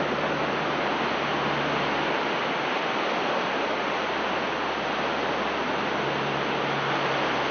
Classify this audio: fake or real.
real